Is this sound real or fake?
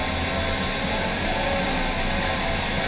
real